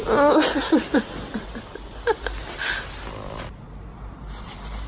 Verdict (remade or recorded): recorded